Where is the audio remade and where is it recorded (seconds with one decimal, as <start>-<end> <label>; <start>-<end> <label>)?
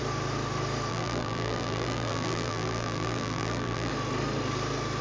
0.0-0.9 recorded; 0.9-3.9 remade; 3.9-5.0 recorded